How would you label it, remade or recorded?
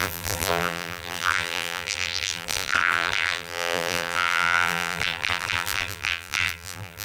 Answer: remade